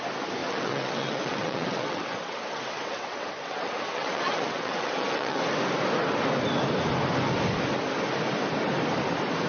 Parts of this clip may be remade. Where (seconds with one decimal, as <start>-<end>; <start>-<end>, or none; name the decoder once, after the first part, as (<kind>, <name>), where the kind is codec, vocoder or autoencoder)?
0.4-5.4 (vocoder, WaveNeXt)